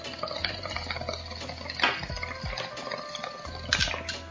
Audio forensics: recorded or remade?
recorded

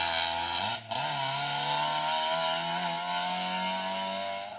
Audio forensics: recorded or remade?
recorded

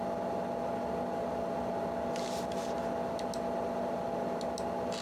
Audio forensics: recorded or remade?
recorded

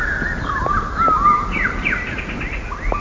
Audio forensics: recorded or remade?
recorded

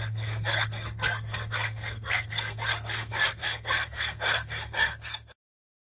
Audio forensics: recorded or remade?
remade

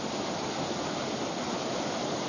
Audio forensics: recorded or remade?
recorded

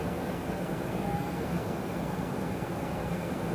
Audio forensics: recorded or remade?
remade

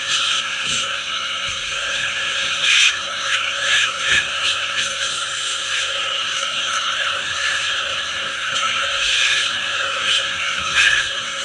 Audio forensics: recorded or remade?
remade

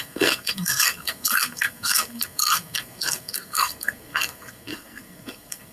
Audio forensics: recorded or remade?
remade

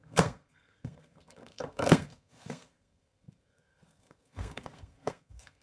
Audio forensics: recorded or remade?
remade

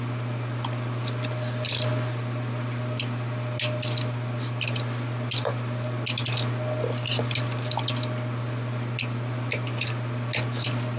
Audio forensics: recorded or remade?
recorded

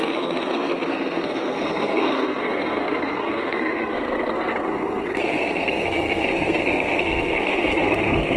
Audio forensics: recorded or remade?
remade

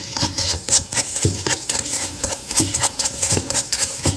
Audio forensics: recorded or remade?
remade